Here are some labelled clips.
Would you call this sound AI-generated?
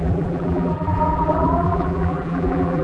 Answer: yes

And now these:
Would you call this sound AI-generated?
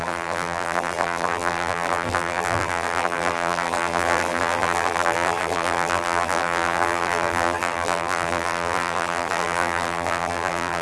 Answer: yes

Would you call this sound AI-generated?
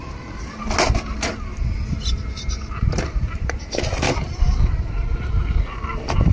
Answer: yes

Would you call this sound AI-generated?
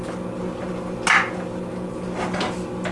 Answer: no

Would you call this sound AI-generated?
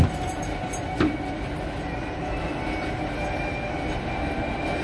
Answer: no